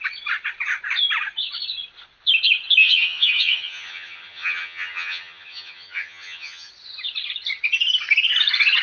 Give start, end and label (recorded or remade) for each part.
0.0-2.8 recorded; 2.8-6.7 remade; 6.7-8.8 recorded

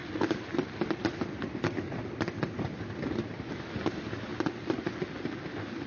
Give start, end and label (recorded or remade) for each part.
0.0-5.9 recorded